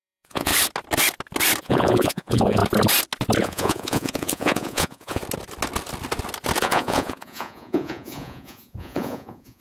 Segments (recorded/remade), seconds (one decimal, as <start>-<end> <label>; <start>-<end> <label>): 0.0-0.5 remade; 0.5-1.6 recorded; 1.6-2.6 remade; 2.6-3.4 recorded; 3.4-5.2 remade; 5.2-6.6 recorded; 6.6-9.6 remade